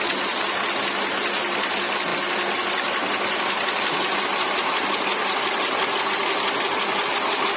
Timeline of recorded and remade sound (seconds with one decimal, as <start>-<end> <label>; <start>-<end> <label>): 0.0-7.6 recorded